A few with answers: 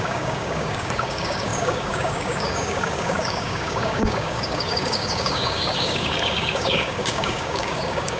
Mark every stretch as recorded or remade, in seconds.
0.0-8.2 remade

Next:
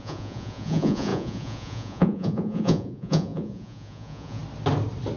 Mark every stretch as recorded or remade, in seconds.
0.0-4.4 remade; 4.4-5.2 recorded

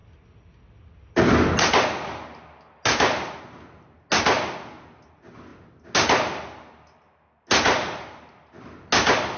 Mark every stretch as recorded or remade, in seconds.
0.0-9.4 recorded

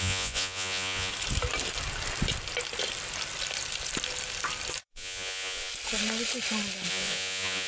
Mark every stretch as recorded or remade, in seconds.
0.0-1.1 remade; 1.1-4.8 recorded; 4.8-5.7 remade; 5.7-6.9 recorded; 6.9-7.7 remade

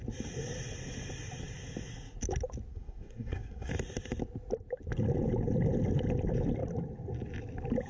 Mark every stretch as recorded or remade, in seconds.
0.0-2.7 recorded; 2.7-3.7 remade; 3.7-7.9 recorded

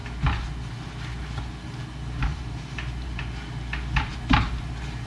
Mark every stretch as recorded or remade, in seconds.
0.0-2.3 recorded; 2.3-3.2 remade; 3.2-5.1 recorded

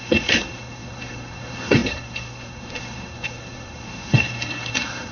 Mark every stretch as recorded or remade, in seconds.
0.0-5.1 remade